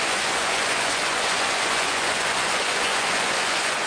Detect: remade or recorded remade